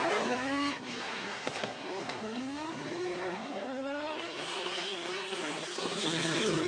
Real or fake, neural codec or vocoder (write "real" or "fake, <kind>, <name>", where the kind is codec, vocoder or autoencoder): fake, codec, SNAC